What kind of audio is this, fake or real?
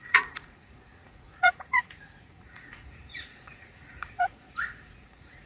fake